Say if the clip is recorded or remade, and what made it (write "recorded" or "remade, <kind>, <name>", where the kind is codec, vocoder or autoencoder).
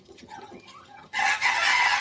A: remade, vocoder, HiFi-GAN